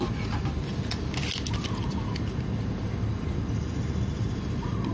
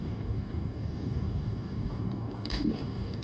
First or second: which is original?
first